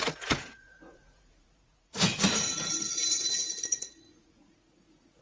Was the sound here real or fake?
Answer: fake